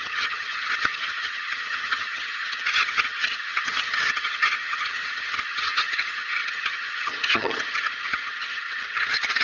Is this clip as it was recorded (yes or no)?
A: no